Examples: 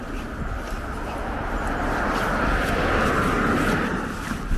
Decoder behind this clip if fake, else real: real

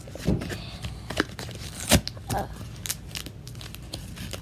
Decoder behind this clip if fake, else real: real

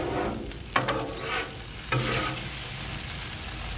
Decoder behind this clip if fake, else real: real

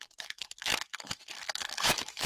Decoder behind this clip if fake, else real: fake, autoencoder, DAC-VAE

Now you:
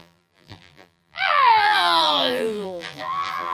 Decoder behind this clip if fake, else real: fake, vocoder, BigVGAN v2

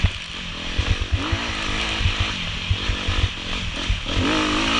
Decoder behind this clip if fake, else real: real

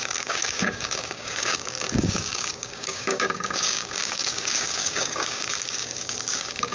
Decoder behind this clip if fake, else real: fake, codec, DAC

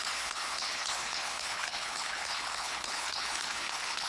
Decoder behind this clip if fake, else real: fake, codec, HILCodec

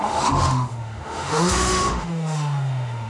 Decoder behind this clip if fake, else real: fake, autoencoder, DAC-VAE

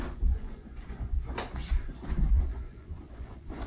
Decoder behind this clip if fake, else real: fake, vocoder, Vocos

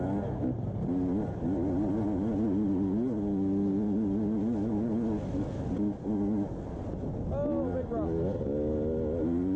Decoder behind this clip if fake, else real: real